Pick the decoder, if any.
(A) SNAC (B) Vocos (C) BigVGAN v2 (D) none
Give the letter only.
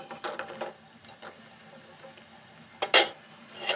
D